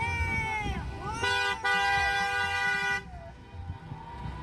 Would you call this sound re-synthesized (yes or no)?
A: no